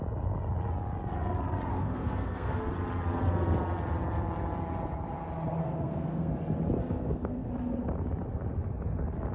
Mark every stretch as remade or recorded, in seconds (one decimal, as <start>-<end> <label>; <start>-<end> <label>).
0.0-1.7 recorded; 1.7-2.7 remade; 2.7-5.6 recorded; 5.6-6.3 remade; 6.3-6.8 recorded; 6.8-7.5 remade; 7.5-9.3 recorded